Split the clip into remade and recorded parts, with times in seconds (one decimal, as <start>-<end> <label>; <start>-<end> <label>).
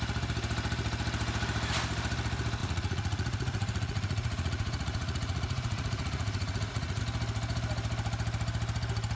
0.0-2.6 recorded; 2.6-7.0 remade; 7.0-9.2 recorded